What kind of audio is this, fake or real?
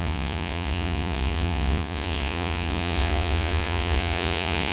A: fake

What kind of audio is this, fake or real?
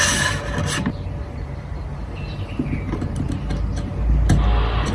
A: real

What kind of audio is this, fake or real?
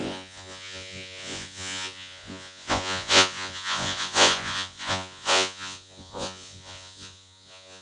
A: fake